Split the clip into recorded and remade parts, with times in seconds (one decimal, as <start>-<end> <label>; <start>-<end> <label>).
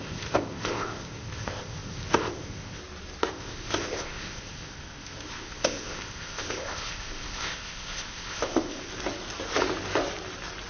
0.0-2.8 remade; 2.8-3.3 recorded; 3.3-8.9 remade; 8.9-10.7 recorded